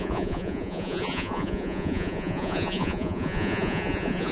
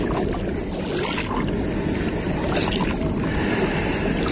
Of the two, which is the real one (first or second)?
second